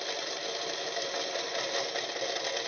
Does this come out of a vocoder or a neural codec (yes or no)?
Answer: no